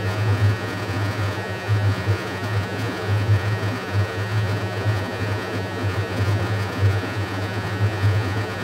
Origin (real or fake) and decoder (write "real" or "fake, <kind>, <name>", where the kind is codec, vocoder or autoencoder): fake, vocoder, Vocos